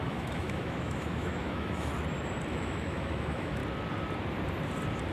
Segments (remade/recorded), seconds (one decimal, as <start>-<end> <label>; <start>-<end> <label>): 0.0-1.9 remade; 1.9-2.5 recorded; 2.5-3.6 remade; 3.6-5.1 recorded